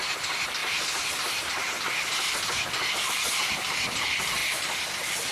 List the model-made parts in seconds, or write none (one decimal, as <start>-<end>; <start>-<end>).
4.4-5.3